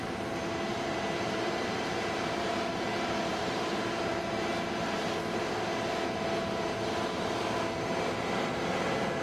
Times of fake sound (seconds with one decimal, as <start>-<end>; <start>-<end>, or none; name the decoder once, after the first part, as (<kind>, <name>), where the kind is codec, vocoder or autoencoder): 0.7-2.5 (vocoder, BigVGAN v2); 3.3-3.9